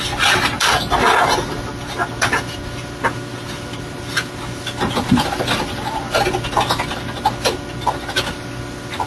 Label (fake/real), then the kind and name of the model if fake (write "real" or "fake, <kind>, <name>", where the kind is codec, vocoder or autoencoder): real